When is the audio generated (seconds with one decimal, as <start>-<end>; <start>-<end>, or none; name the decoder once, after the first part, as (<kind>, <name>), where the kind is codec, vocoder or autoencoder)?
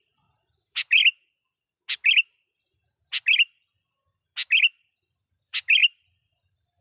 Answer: 0.0-1.0 (vocoder, BigVGAN v2); 5.1-6.8